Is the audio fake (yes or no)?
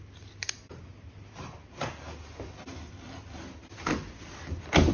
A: no